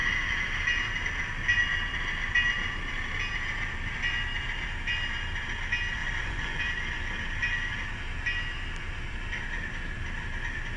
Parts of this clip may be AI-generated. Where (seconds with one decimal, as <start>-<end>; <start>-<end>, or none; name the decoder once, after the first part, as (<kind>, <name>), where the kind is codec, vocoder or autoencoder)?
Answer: 6.0-6.6 (vocoder, Vocos)